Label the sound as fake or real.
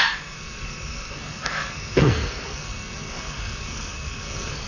fake